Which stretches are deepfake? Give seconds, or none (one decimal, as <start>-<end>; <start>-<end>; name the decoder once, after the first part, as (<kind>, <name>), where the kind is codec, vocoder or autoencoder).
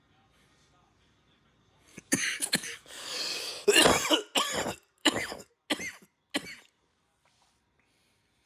1.9-3.5 (codec, DAC); 5.0-5.5